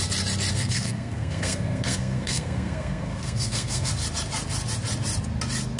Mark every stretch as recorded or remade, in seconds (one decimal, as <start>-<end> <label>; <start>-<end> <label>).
0.0-0.5 recorded; 0.5-3.9 remade; 3.9-5.8 recorded